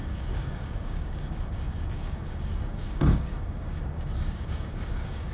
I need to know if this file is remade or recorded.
remade